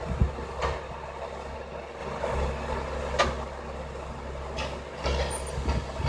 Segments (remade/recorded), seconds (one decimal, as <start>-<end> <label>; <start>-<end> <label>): 0.0-6.1 recorded